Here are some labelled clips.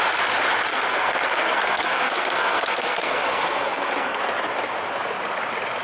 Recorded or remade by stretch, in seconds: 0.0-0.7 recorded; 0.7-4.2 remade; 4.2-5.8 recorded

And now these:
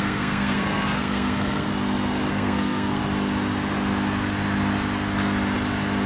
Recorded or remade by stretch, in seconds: 0.0-1.7 remade; 1.7-2.3 recorded; 2.3-3.0 remade; 3.0-6.1 recorded

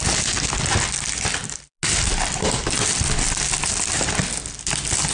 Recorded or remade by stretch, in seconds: 0.0-5.1 recorded

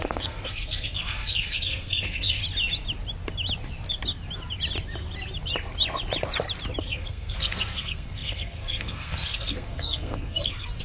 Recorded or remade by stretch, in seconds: 0.0-2.4 remade; 2.4-6.8 recorded; 6.8-10.8 remade

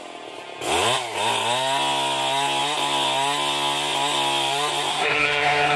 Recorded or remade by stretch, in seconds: 0.0-4.9 recorded; 4.9-5.8 remade

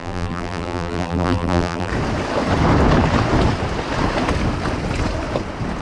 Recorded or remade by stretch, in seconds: 0.0-1.9 remade; 1.9-5.8 recorded